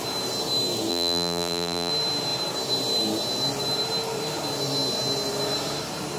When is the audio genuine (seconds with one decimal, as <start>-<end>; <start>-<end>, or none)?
0.0-0.9; 1.9-6.2